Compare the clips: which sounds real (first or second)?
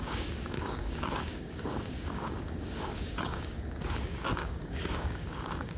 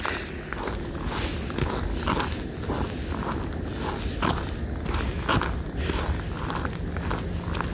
second